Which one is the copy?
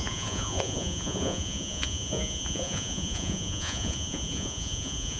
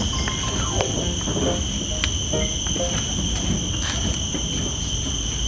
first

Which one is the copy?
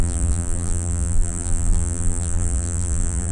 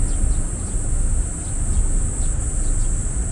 first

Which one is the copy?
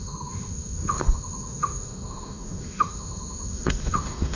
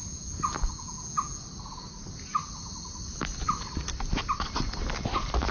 first